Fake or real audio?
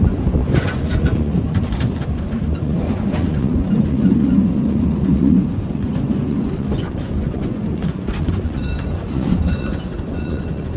fake